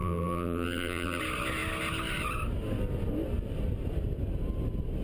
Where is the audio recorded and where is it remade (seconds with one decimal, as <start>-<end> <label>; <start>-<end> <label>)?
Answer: 0.0-1.2 remade; 1.2-5.0 recorded